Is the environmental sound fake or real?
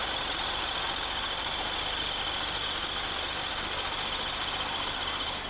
real